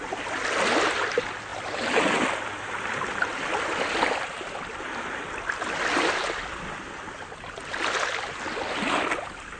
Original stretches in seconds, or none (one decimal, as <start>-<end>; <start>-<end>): 0.0-9.6